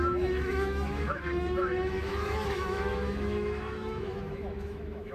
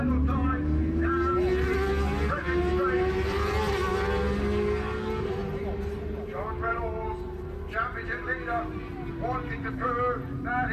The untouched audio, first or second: second